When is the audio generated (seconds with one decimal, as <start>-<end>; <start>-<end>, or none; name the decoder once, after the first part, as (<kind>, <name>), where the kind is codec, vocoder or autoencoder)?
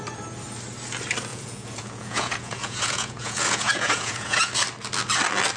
1.3-4.5 (vocoder, Vocos)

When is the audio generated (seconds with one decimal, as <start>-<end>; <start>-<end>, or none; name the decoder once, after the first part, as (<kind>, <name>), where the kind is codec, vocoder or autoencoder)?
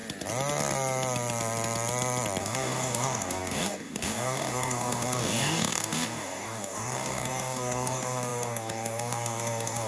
2.4-9.9 (codec, DAC)